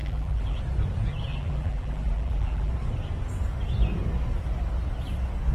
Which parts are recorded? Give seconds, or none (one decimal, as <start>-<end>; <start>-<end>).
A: 0.6-1.3; 2.7-5.5